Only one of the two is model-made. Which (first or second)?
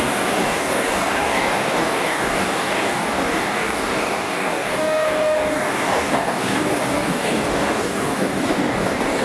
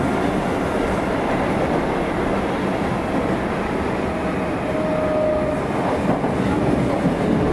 first